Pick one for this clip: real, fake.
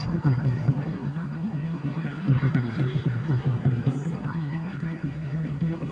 fake